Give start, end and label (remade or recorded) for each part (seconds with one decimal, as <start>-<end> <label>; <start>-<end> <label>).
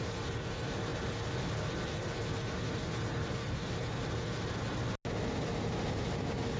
0.0-6.6 recorded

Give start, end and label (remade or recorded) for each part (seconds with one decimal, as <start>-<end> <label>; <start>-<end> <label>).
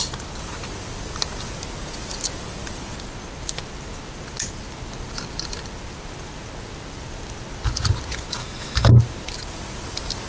0.0-8.4 recorded; 8.4-9.0 remade; 9.0-10.3 recorded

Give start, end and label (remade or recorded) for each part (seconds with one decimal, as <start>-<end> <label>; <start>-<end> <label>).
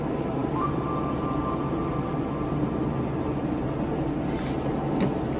0.0-5.4 recorded